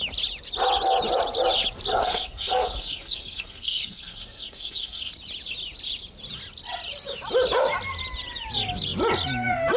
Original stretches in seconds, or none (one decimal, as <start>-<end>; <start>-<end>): 0.0-1.9; 5.1-9.8